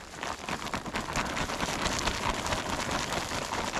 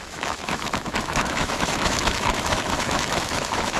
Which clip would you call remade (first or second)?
second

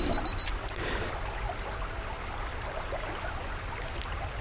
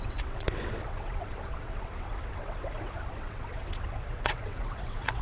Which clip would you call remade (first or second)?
second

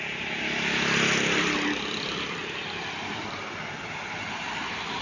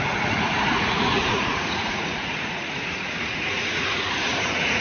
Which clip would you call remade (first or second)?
second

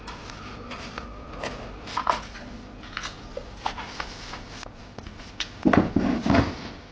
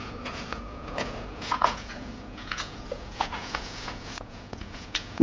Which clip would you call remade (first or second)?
second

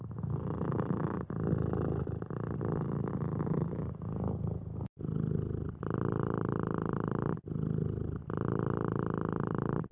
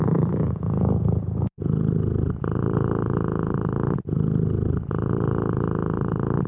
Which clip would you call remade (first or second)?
second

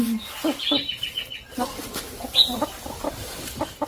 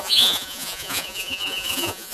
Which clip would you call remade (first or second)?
second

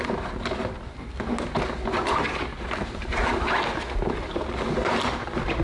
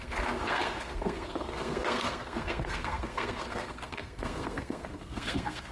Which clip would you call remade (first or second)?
second